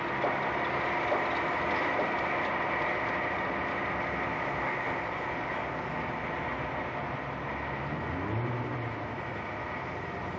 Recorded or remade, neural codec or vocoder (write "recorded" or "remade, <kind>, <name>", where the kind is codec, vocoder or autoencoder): recorded